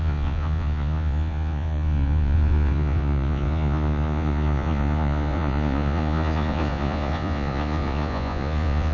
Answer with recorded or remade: remade